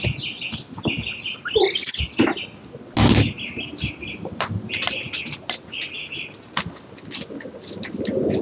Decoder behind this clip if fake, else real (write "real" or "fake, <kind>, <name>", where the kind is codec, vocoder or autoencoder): real